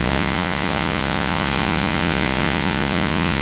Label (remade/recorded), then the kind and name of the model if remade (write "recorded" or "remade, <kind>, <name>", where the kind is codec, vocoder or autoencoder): remade, vocoder, Vocos